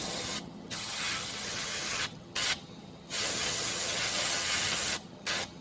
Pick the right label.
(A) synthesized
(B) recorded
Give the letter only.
A